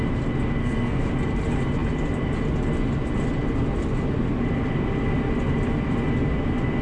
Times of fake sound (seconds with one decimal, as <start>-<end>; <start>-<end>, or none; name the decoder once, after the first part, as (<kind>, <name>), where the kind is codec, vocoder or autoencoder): 0.6-1.1 (codec, SNAC)